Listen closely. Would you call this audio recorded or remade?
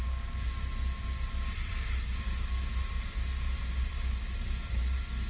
recorded